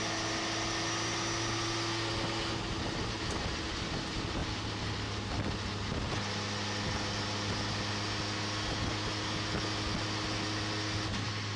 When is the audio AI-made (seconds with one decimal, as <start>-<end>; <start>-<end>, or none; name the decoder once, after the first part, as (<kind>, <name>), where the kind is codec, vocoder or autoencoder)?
none